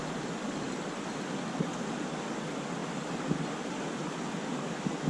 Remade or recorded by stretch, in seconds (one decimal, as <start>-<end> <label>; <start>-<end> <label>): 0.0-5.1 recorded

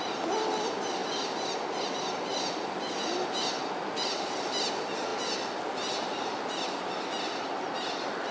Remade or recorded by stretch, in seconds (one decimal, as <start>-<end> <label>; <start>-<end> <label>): 0.0-8.3 recorded

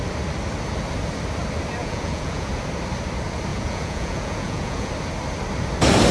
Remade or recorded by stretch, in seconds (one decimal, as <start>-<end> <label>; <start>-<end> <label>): 0.0-1.8 recorded; 1.8-2.5 remade; 2.5-3.5 recorded; 3.5-4.9 remade; 4.9-6.1 recorded

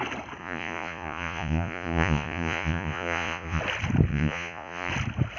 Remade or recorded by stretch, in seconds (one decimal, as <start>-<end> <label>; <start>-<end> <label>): 0.0-0.4 recorded; 0.4-3.6 remade; 3.6-4.1 recorded; 4.1-4.9 remade; 4.9-5.4 recorded

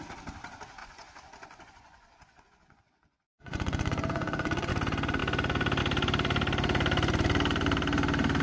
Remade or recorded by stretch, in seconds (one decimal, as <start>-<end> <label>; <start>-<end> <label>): 0.0-0.8 recorded; 0.8-4.7 remade; 4.7-8.4 recorded

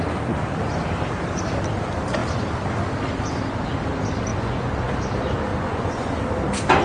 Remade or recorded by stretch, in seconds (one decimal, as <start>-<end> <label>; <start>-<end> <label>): 0.0-4.3 recorded; 4.3-4.9 remade; 4.9-5.5 recorded; 5.5-6.2 remade; 6.2-6.8 recorded

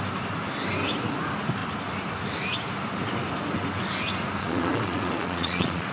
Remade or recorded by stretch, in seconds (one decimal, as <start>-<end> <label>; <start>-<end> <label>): 0.0-4.4 recorded; 4.4-5.9 remade